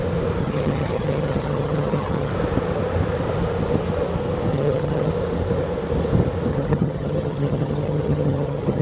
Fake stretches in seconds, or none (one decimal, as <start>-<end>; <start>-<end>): 0.4-2.3; 4.5-5.1; 6.5-8.8